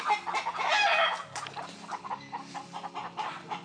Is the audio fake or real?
real